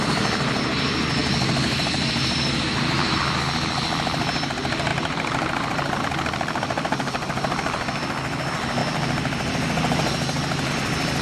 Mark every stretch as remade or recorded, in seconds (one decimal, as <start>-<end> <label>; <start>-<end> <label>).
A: 0.0-1.2 recorded; 1.2-3.2 remade; 3.2-4.9 recorded; 4.9-6.0 remade; 6.0-11.2 recorded